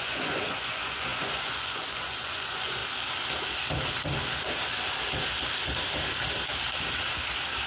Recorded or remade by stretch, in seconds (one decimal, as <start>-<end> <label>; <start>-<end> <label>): 0.0-2.8 remade; 2.8-7.7 recorded